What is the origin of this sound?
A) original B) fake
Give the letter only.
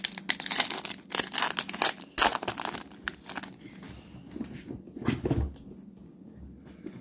A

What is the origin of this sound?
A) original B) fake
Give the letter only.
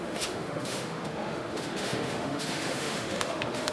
B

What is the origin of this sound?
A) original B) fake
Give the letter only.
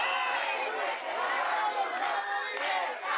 A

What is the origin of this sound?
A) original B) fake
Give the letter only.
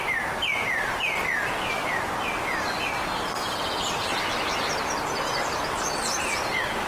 A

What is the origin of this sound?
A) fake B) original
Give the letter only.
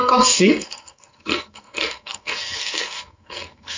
A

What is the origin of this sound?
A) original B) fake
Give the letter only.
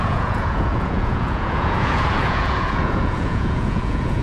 B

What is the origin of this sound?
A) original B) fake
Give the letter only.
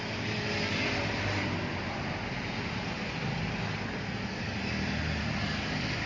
A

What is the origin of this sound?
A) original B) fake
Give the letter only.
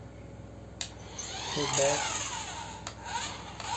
A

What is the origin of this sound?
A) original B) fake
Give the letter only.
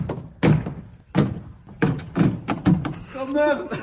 A